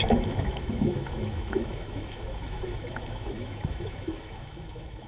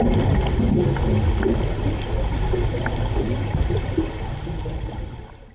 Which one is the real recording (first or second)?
second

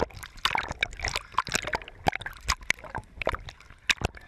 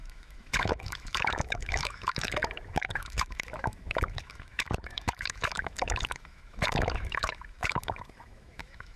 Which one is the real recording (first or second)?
first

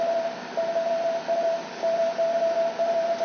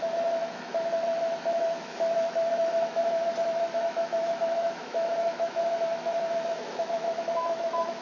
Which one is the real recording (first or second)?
first